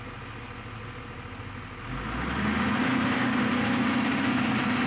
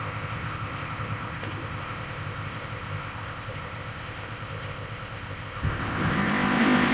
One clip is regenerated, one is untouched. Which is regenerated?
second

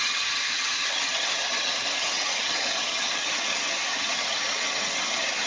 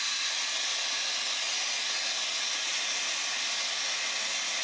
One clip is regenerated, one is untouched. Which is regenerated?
first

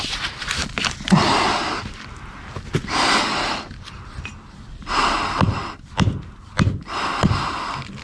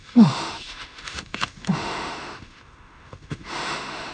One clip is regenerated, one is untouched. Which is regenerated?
second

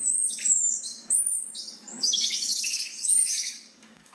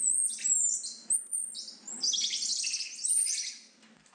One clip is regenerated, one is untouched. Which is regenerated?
first